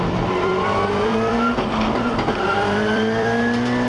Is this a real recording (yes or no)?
no